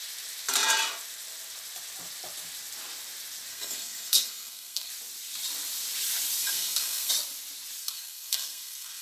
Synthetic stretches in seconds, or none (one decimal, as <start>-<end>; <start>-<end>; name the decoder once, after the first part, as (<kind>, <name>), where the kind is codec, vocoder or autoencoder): 3.5-4.9 (codec, SNAC); 6.4-7.1; 7.8-9.0